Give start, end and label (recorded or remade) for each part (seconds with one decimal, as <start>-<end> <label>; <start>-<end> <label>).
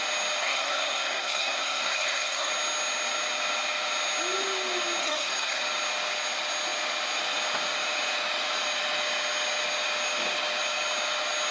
0.0-0.4 recorded; 0.4-2.5 remade; 2.5-5.0 recorded; 5.0-5.6 remade; 5.6-11.5 recorded